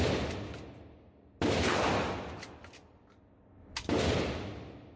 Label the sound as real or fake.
real